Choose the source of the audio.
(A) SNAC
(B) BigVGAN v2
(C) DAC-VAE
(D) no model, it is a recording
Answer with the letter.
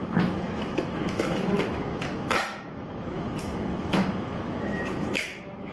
C